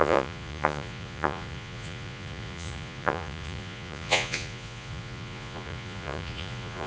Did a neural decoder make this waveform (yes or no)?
yes